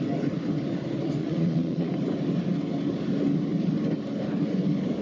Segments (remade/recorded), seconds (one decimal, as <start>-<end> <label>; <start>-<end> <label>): 0.0-1.2 recorded; 1.2-1.9 remade; 1.9-5.0 recorded